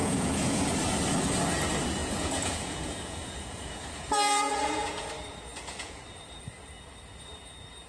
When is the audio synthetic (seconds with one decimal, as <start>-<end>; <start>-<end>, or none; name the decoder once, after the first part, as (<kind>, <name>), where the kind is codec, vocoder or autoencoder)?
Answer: 0.0-0.7 (vocoder, Vocos); 2.0-5.1; 5.5-6.0